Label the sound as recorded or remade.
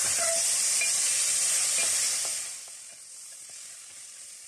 recorded